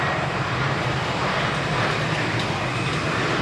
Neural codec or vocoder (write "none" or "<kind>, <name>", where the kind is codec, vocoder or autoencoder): none